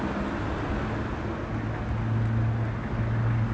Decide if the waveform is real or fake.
real